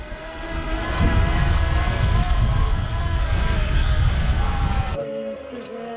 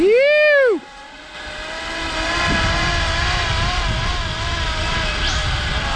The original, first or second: second